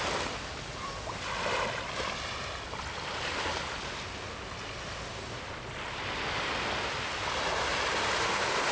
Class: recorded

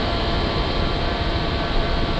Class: remade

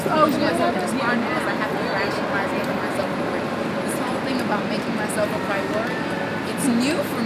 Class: recorded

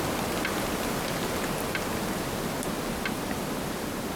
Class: recorded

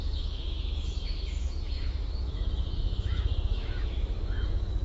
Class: remade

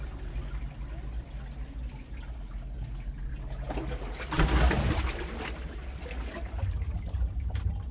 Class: recorded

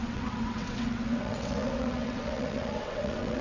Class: remade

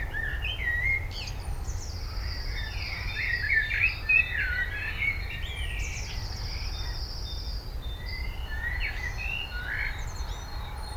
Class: remade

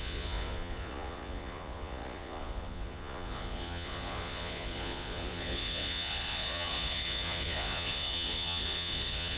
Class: remade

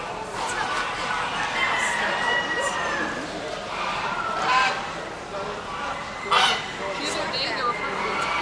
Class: recorded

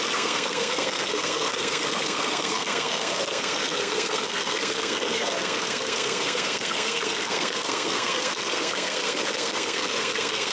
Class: remade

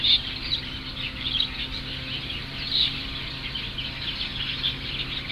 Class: recorded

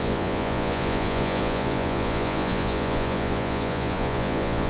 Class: remade